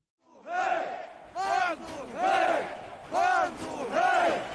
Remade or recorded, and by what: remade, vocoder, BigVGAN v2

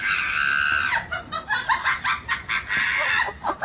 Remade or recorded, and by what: recorded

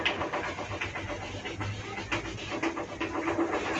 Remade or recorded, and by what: recorded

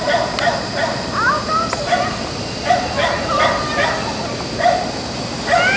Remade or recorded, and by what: recorded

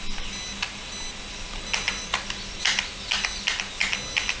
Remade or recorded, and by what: recorded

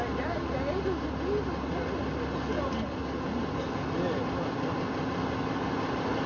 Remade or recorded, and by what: recorded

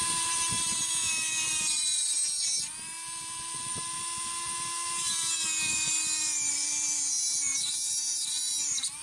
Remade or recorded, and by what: remade, vocoder, BigVGAN v2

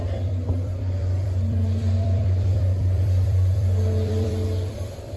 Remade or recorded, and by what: remade, vocoder, BigVGAN v2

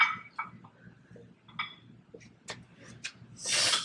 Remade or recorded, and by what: recorded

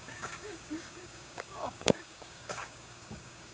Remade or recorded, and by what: remade, codec, DAC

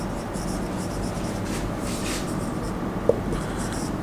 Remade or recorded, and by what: recorded